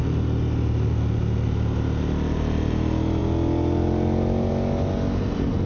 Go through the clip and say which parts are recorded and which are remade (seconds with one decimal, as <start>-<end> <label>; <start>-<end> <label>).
0.0-5.7 recorded